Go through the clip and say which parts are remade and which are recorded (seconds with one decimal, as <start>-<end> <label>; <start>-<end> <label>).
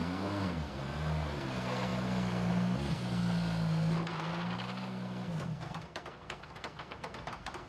0.0-7.7 remade